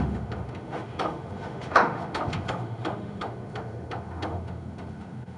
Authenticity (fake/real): fake